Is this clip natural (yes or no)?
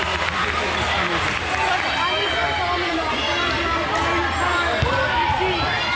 yes